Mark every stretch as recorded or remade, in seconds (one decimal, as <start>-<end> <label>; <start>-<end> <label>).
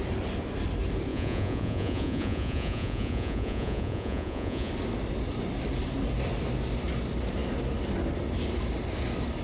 0.0-1.1 recorded; 1.1-4.7 remade; 4.7-9.4 recorded